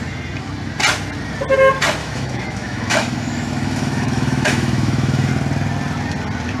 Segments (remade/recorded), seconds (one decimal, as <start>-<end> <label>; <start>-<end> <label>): 0.0-2.0 recorded; 2.0-5.3 remade; 5.3-6.6 recorded